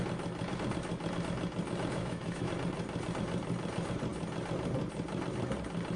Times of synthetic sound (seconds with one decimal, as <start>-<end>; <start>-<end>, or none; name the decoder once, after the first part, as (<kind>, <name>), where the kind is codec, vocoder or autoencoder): 1.9-2.5 (autoencoder, DAC-VAE)